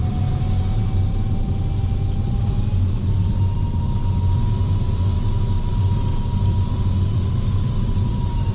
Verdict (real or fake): real